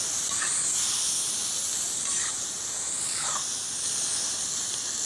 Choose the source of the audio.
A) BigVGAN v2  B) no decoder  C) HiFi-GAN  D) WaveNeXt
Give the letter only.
B